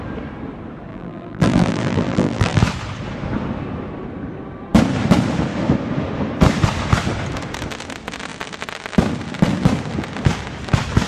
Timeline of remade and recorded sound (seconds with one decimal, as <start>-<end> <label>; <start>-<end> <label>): 0.0-0.9 recorded; 0.9-2.6 remade; 2.6-11.1 recorded